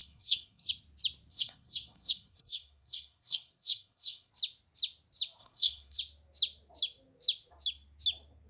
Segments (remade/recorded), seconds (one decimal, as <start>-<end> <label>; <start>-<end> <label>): 0.0-0.7 remade; 0.7-1.3 recorded; 1.3-4.3 remade; 4.3-5.4 recorded; 5.4-6.0 remade; 6.0-8.5 recorded